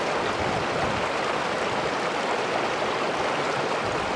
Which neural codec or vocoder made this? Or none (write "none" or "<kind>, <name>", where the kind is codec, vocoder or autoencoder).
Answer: none